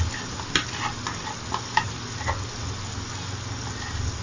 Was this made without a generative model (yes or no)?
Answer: yes